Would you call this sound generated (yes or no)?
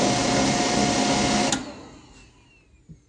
no